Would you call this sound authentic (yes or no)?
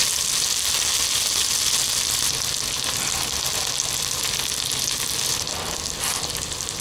yes